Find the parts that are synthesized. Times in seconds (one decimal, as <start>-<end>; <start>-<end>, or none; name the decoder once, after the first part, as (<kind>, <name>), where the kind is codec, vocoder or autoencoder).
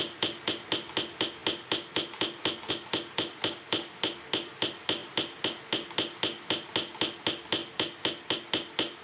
none